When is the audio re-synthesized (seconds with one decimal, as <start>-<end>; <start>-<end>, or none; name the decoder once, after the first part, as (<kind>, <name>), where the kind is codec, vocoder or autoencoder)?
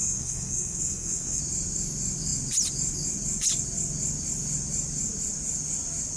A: 0.0-1.4 (codec, SNAC)